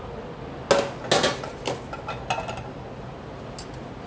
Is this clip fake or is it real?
real